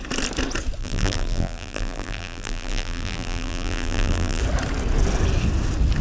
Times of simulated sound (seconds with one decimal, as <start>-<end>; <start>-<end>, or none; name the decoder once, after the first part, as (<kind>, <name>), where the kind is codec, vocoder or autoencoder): 0.8-4.4 (vocoder, BigVGAN v2)